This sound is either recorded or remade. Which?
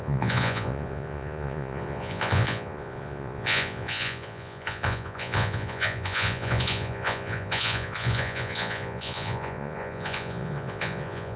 remade